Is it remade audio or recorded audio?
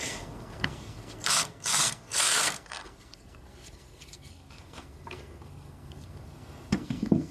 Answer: remade